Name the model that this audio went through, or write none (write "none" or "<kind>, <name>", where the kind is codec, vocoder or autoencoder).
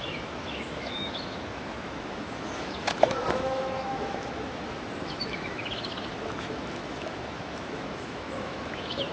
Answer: autoencoder, DAC-VAE